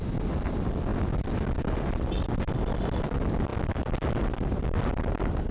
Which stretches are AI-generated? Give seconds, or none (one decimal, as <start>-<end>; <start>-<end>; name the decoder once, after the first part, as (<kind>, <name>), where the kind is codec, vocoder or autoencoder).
none